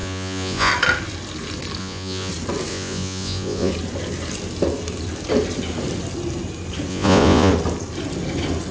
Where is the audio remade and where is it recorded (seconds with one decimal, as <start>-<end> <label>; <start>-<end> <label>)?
0.0-0.7 remade; 0.7-1.8 recorded; 1.8-2.3 remade; 2.3-2.7 recorded; 2.7-3.7 remade; 3.7-6.9 recorded; 6.9-7.5 remade; 7.5-8.7 recorded